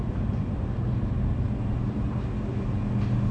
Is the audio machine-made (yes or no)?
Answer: no